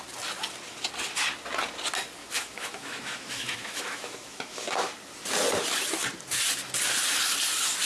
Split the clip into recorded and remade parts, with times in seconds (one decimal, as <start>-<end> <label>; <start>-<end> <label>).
0.0-2.2 recorded; 2.2-4.9 remade; 4.9-7.8 recorded